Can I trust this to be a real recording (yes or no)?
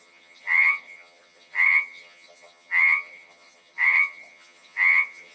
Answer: no